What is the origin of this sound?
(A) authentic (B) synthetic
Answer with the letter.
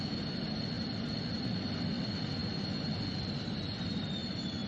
A